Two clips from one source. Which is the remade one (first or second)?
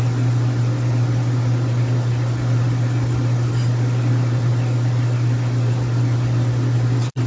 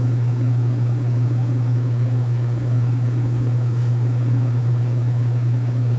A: second